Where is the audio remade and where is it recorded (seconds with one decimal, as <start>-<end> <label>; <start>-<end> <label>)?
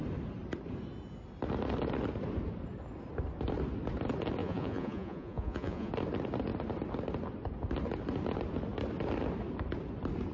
0.0-4.4 recorded; 4.4-5.9 remade; 5.9-10.3 recorded